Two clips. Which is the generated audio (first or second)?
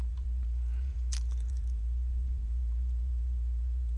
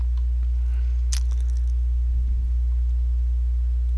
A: first